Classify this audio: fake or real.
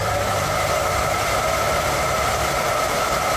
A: fake